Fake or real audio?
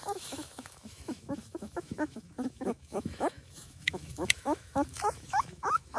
fake